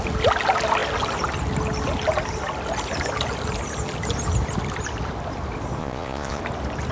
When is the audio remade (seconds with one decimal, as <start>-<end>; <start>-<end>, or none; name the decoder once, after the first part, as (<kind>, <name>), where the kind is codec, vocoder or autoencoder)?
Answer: 5.8-6.4 (vocoder, Vocos)